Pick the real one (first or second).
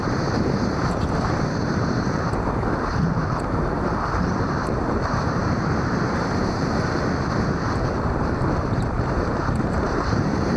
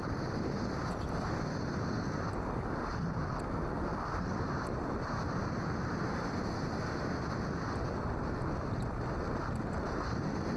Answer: second